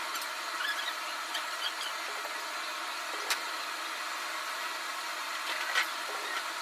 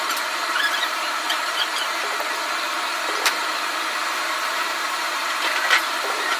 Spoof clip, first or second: second